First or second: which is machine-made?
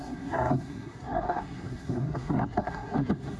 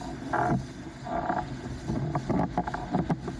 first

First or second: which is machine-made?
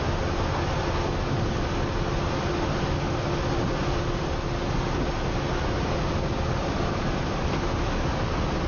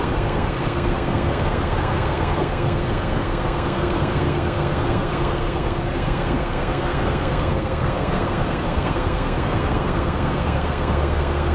second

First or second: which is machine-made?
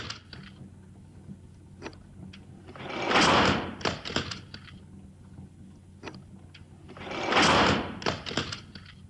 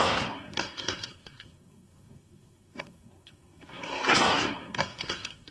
second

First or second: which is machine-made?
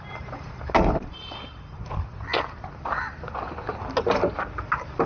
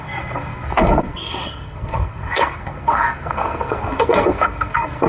second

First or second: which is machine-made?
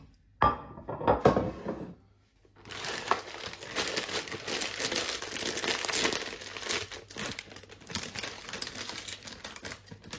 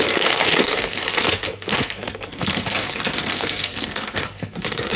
second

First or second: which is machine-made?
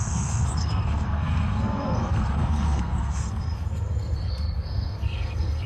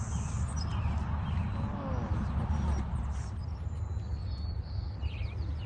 first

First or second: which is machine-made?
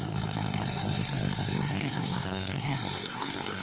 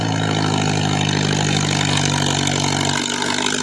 first